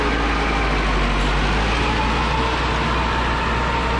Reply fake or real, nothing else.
real